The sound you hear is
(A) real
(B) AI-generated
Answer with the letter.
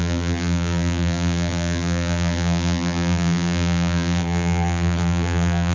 B